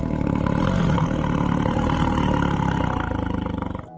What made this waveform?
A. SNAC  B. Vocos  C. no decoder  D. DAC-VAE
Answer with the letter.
C